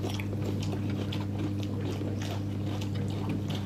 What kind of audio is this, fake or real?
real